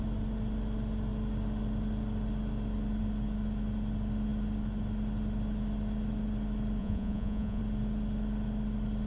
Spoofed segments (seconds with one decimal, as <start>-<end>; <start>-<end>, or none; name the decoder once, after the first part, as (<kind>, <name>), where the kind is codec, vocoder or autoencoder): 6.8-7.6 (vocoder, Vocos)